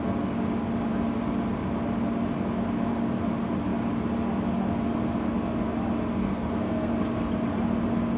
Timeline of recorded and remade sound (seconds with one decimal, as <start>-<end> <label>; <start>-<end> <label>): 0.0-6.2 recorded; 6.2-6.9 remade; 6.9-8.2 recorded